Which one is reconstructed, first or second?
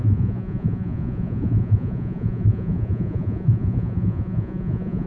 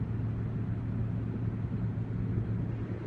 first